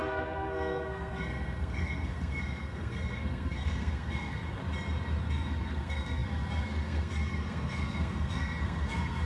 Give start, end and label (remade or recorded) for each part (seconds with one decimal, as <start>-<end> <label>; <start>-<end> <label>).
0.0-4.6 remade; 4.6-5.2 recorded; 5.2-9.3 remade